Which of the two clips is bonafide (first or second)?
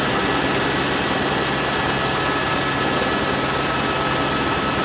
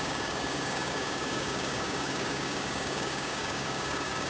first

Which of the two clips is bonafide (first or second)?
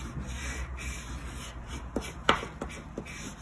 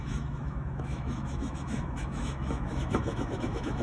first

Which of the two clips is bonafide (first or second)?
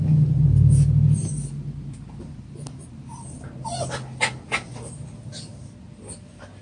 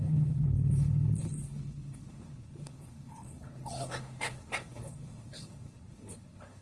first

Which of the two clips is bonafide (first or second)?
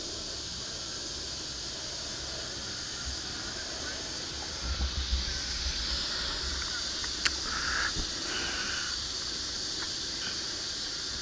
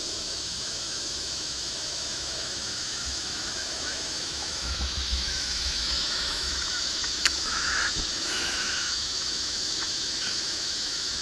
first